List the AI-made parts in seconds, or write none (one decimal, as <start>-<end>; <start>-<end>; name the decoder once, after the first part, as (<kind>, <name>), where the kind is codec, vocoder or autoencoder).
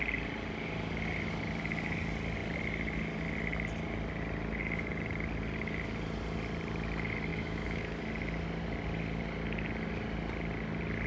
7.3-8.0 (autoencoder, DAC-VAE)